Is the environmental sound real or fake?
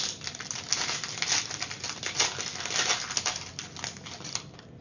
real